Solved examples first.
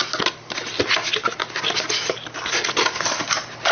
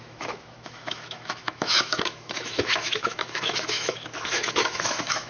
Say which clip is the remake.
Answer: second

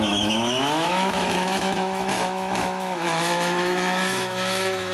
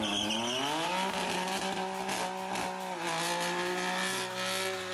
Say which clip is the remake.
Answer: first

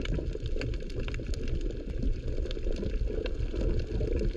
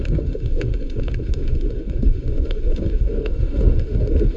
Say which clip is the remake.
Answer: second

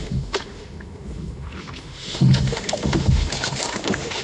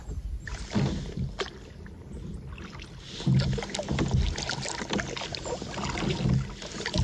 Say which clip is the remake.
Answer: first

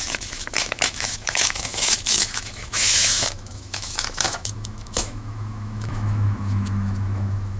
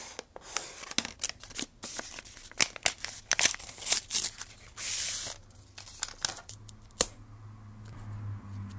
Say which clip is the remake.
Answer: first